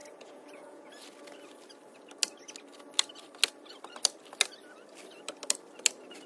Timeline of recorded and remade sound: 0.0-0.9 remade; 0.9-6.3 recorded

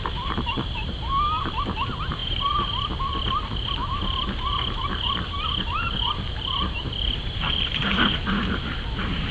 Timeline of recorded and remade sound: 0.0-9.3 remade

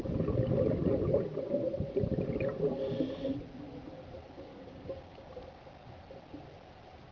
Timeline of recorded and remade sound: 0.0-4.5 recorded; 4.5-5.3 remade; 5.3-7.1 recorded